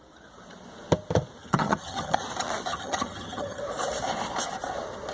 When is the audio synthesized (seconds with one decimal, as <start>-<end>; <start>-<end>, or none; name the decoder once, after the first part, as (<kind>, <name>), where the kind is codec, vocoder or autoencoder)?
1.4-2.2 (vocoder, HiFi-GAN); 2.7-3.6

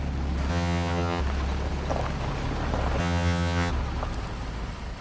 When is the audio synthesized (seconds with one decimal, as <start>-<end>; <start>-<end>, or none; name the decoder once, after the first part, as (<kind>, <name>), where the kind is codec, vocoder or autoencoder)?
0.5-1.2 (vocoder, HiFi-GAN); 3.0-3.7